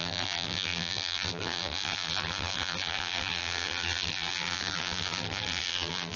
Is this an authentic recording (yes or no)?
no